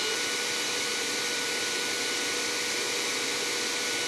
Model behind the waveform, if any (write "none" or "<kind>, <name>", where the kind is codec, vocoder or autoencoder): none